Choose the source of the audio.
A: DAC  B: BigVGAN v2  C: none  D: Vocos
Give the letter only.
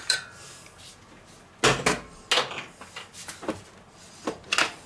C